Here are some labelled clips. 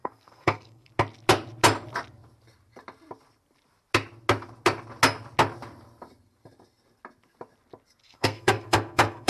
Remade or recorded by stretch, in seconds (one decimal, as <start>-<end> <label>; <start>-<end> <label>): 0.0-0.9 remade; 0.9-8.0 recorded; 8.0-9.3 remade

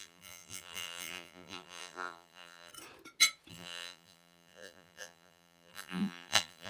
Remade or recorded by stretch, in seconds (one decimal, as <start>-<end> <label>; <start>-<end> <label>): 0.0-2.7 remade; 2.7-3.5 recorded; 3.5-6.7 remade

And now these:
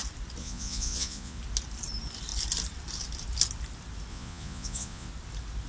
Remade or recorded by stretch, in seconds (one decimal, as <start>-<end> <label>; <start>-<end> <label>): 0.0-0.4 recorded; 0.4-1.4 remade; 1.4-4.1 recorded; 4.1-5.1 remade; 5.1-5.7 recorded

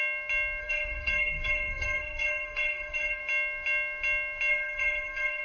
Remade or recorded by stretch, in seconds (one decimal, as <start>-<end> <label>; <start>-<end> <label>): 0.0-0.6 recorded; 0.6-3.2 remade; 3.2-4.5 recorded; 4.5-5.4 remade

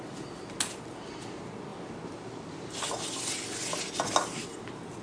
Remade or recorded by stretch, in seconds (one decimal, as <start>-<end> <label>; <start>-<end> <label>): 0.0-5.0 recorded

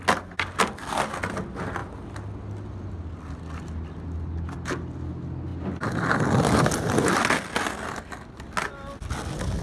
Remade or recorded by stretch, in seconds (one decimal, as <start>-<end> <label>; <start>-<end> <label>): 0.0-9.6 recorded

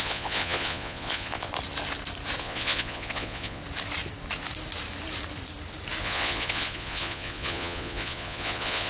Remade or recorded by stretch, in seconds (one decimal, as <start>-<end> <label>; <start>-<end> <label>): 0.0-1.5 remade; 1.5-2.4 recorded; 2.4-3.6 remade; 3.6-6.0 recorded; 6.0-8.9 remade